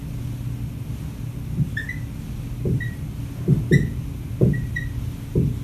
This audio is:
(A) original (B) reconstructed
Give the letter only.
A